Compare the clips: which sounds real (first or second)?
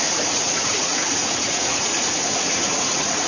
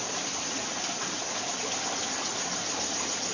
second